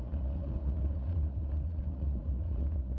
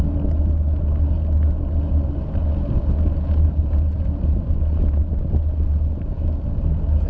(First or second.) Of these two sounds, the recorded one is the second